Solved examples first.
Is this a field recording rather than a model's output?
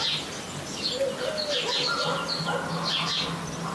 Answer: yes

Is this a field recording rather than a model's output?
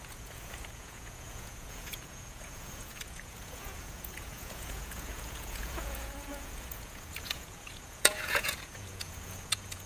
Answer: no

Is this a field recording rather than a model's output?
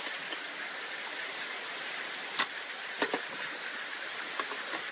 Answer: yes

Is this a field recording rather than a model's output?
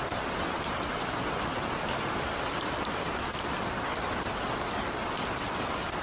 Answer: yes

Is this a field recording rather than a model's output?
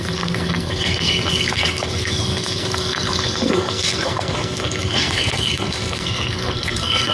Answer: no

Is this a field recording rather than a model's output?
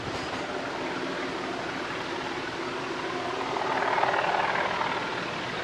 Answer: yes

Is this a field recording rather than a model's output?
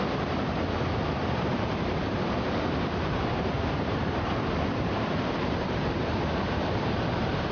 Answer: no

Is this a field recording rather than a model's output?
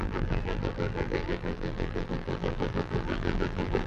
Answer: no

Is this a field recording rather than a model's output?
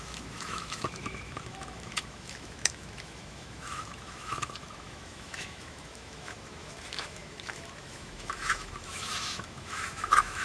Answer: no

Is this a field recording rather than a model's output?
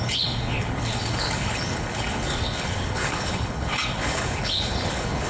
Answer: no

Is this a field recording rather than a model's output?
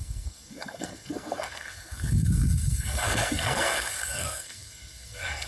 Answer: no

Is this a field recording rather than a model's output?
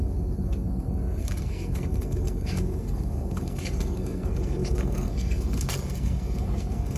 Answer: no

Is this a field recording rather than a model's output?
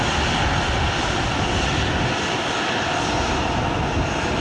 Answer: yes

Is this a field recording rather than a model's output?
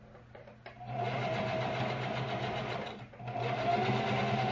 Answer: yes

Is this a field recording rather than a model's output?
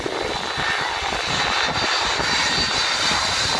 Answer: yes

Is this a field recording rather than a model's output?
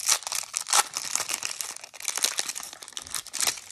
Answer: yes